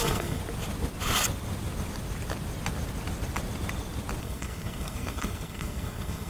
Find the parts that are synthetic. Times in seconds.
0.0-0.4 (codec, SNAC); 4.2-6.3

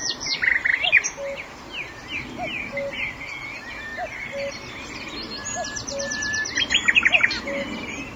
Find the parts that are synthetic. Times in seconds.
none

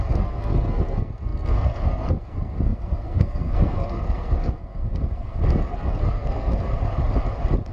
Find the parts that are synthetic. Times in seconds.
0.0-6.8 (codec, SNAC)

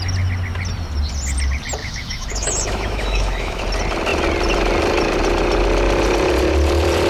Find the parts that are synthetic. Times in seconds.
1.8-3.6 (autoencoder, DAC-VAE)

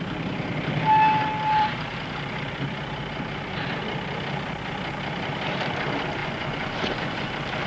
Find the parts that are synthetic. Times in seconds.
6.2-7.3 (vocoder, Vocos)

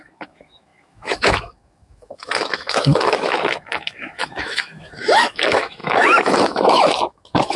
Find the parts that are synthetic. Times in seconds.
0.0-7.6 (autoencoder, DAC-VAE)